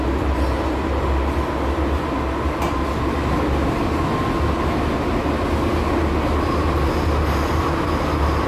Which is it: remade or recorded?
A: recorded